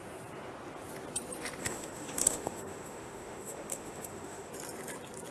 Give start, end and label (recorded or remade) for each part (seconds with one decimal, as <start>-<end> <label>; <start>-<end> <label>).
0.0-1.6 recorded; 1.6-4.5 remade; 4.5-5.3 recorded